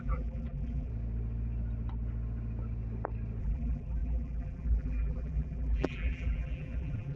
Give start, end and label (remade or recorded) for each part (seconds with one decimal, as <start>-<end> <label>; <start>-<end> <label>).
0.0-0.9 remade; 0.9-3.4 recorded; 3.4-7.2 remade